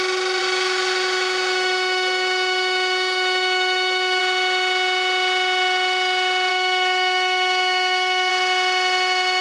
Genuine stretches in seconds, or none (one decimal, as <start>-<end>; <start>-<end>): 0.0-0.4; 4.2-6.5; 8.3-9.4

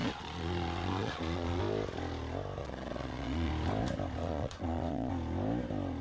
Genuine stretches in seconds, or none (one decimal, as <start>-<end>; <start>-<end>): 1.6-2.6; 3.5-4.2; 5.1-6.0

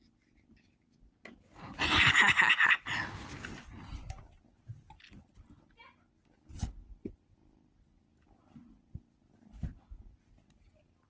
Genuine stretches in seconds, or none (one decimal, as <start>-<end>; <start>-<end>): 0.0-11.1

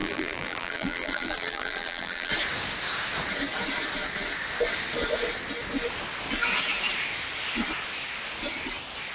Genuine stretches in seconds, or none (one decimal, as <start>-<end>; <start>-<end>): 2.3-9.1

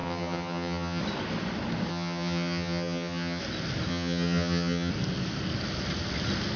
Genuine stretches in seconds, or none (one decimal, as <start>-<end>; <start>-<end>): 1.0-1.9; 3.4-3.9; 4.9-6.6

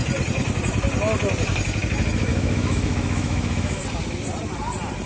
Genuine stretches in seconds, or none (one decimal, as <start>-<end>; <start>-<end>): 0.0-2.3; 3.8-5.1

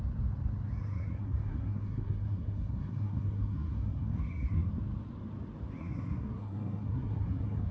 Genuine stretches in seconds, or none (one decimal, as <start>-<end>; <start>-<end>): 0.0-0.8; 4.7-5.8